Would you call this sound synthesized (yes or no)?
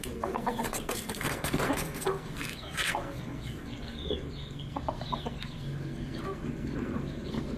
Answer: yes